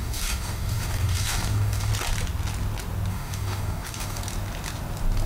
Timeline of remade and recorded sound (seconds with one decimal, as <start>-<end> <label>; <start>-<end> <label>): 0.0-1.9 remade; 1.9-3.1 recorded; 3.1-4.2 remade; 4.2-5.3 recorded